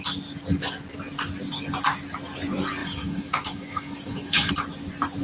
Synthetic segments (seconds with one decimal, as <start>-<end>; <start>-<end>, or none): 2.8-4.5